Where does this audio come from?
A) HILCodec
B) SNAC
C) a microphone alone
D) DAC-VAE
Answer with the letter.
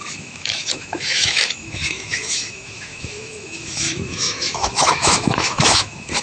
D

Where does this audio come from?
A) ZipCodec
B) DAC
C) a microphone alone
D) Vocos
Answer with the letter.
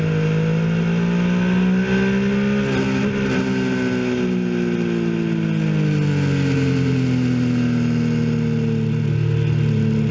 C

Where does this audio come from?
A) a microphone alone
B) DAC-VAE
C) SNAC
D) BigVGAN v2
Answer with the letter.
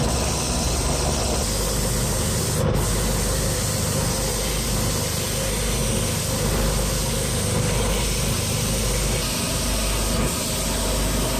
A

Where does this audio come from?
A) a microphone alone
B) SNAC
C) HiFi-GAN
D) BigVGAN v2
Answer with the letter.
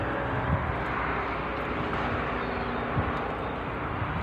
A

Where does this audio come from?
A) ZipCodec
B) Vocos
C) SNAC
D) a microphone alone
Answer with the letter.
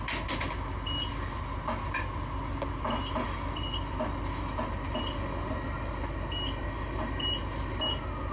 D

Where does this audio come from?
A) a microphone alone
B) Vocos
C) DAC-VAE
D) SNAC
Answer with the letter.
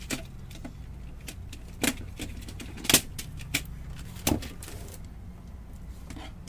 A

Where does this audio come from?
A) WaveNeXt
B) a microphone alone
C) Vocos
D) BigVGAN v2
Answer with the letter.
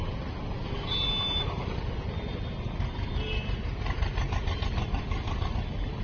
B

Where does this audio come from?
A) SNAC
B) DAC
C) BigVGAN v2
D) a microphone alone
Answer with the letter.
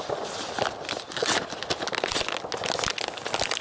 D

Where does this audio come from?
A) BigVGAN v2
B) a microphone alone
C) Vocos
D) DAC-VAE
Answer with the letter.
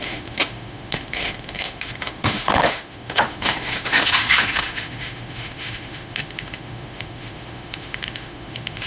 D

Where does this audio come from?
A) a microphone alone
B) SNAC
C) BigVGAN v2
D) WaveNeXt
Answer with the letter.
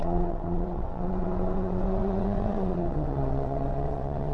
D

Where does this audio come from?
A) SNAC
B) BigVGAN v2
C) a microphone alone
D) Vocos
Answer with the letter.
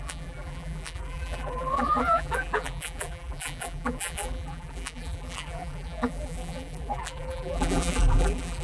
B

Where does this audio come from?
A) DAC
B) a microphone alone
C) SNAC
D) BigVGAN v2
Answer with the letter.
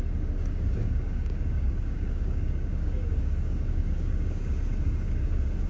A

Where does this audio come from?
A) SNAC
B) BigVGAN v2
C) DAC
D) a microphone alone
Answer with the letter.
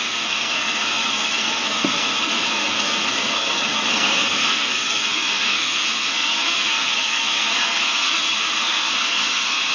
A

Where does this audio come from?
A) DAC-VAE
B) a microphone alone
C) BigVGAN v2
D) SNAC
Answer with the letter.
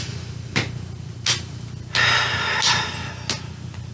B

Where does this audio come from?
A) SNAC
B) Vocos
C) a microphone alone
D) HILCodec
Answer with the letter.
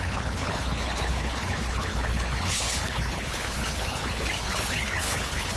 D